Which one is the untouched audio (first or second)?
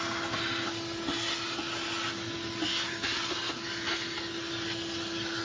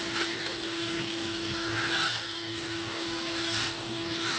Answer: first